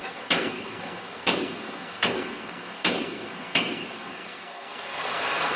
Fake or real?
fake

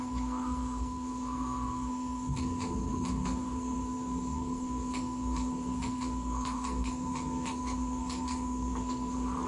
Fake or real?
fake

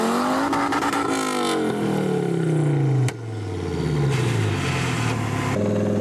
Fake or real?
real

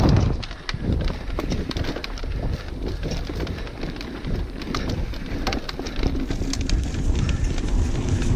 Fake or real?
real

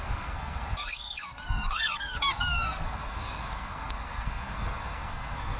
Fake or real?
fake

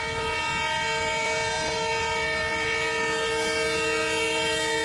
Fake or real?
real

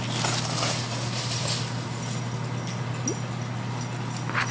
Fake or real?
real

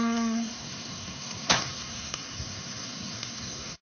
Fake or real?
fake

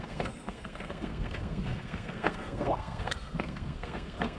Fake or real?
fake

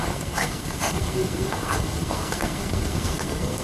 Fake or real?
fake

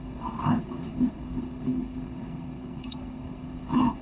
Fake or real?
fake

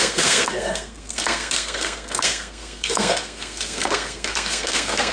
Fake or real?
fake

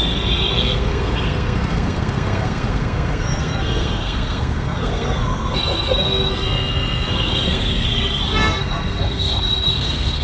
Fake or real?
fake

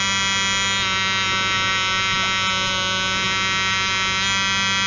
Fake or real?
real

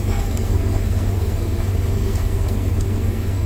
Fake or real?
fake